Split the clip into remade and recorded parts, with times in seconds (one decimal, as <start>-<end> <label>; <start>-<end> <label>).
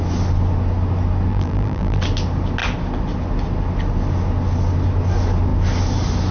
0.0-1.3 recorded; 1.3-2.0 remade; 2.0-6.3 recorded